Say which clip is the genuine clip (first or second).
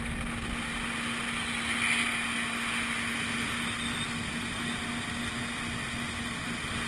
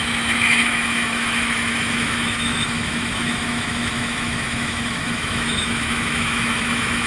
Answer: first